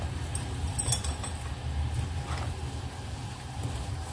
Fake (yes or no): no